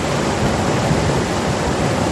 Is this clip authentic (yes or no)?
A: yes